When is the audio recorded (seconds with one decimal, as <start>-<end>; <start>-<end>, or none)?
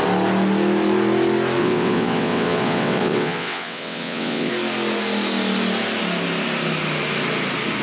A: 0.0-1.6; 4.5-7.8